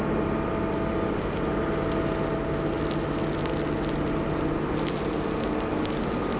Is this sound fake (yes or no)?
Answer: no